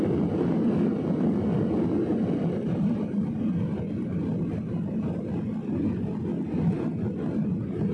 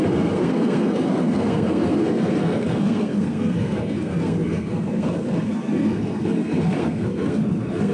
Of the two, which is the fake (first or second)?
second